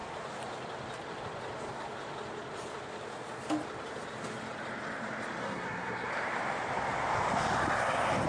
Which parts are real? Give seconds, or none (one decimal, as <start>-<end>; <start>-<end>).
0.0-5.4; 6.1-8.3